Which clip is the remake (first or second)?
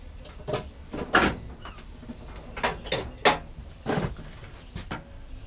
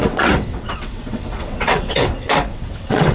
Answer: second